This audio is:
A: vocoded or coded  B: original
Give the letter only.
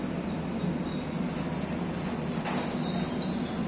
B